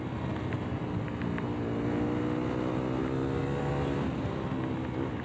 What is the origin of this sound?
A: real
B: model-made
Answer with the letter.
A